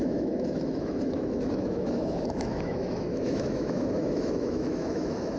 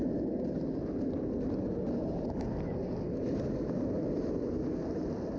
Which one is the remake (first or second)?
first